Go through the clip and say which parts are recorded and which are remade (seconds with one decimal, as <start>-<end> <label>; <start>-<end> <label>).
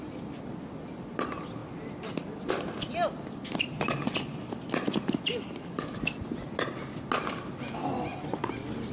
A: 0.0-8.9 recorded